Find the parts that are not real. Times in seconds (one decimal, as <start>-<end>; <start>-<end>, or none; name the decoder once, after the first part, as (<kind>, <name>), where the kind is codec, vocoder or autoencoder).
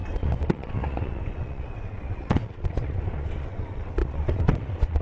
0.0-5.0 (vocoder, WaveNeXt)